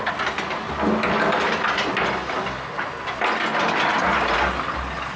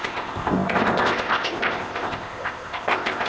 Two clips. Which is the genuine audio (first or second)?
first